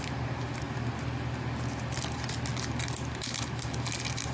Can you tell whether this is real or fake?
real